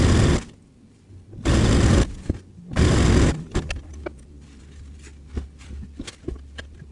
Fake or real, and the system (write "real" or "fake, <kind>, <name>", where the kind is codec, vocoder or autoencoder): real